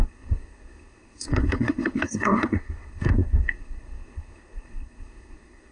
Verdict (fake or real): fake